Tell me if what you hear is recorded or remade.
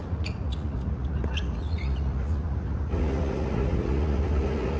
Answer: remade